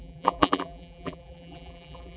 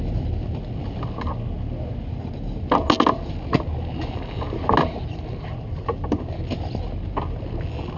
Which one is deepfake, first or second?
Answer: first